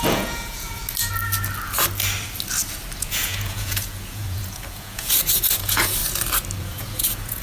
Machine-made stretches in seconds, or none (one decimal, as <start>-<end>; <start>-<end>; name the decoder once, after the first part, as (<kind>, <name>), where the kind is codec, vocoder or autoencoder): 0.0-0.8 (vocoder, Vocos); 3.0-6.0; 6.6-7.4